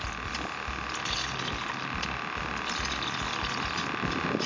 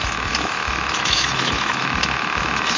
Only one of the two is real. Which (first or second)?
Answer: first